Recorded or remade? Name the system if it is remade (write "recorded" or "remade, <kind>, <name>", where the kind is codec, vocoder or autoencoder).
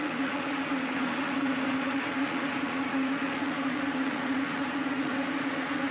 remade, vocoder, Vocos